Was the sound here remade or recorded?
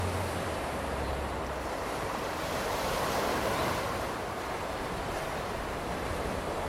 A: remade